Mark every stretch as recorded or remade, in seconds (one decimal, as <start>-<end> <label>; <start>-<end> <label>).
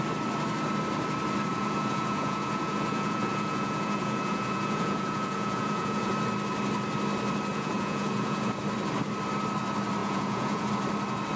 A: 0.0-1.5 recorded; 1.5-6.1 remade; 6.1-7.5 recorded; 7.5-8.6 remade; 8.6-10.0 recorded; 10.0-10.7 remade; 10.7-11.4 recorded